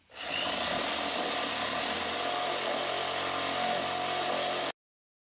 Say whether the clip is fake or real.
real